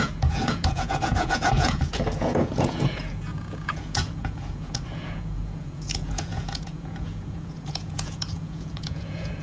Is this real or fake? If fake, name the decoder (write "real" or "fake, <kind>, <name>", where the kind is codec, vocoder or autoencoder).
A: fake, vocoder, Vocos